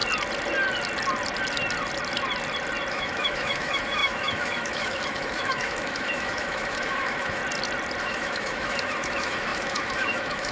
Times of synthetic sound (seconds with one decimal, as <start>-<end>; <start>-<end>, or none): 2.9-7.4; 8.0-10.5